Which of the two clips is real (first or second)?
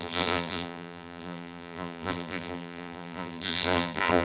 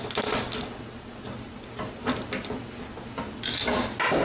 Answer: second